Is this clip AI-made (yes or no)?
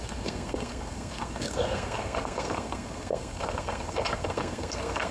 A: yes